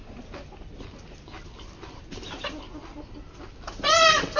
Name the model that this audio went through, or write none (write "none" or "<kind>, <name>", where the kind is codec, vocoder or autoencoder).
none